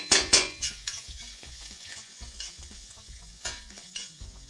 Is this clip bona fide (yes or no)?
no